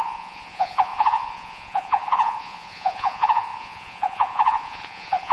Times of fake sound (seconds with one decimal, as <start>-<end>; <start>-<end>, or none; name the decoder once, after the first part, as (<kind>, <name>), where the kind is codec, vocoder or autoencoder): 0.0-5.3 (vocoder, Vocos)